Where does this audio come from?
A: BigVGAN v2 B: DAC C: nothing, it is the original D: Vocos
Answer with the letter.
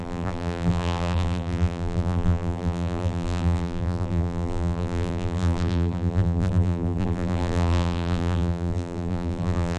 A